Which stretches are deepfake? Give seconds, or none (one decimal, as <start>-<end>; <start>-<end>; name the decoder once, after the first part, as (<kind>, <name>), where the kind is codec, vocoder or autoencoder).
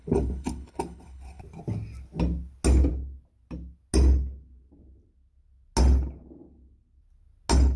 0.0-1.4 (codec, HILCodec)